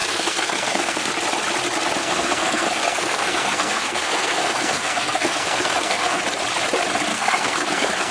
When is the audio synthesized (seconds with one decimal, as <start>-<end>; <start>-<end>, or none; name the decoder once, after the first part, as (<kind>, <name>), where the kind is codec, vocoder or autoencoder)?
0.0-1.1 (codec, SNAC); 2.0-6.2; 7.1-8.1